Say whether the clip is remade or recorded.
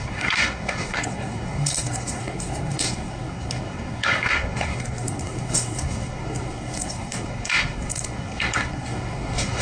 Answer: remade